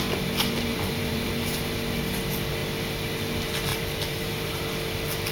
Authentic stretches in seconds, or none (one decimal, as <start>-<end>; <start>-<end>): 0.0-0.7; 1.3-3.7; 4.6-5.3